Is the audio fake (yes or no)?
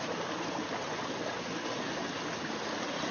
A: no